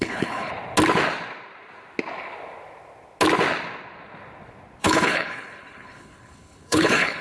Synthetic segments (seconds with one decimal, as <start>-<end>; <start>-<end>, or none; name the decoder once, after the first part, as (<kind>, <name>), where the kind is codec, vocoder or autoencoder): 0.0-0.5 (codec, HILCodec); 4.8-7.2